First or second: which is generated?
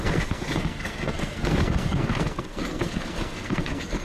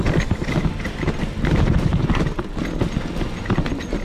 first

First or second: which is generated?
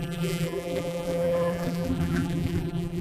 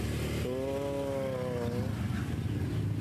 first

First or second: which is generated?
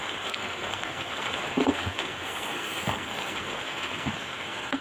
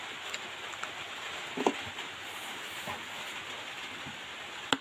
first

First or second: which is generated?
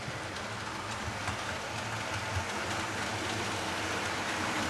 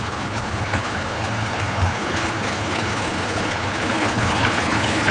second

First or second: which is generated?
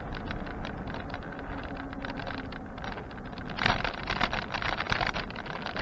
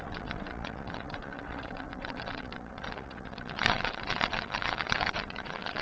second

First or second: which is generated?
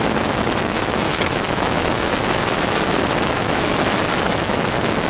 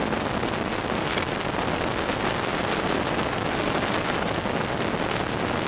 first